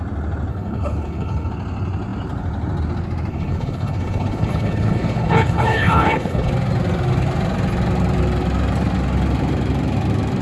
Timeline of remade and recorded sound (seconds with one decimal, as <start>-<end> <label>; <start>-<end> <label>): 0.0-0.5 recorded; 0.5-1.5 remade; 1.5-3.3 recorded; 3.3-6.5 remade; 6.5-10.4 recorded